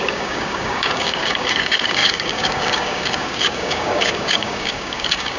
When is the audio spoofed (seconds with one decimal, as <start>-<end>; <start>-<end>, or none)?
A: 0.0-5.4